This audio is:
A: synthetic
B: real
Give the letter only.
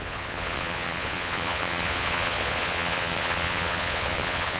A